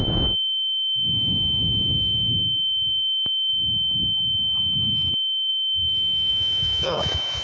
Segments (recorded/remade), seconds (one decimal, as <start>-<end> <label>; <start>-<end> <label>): 0.0-3.5 remade; 3.5-4.6 recorded; 4.6-7.4 remade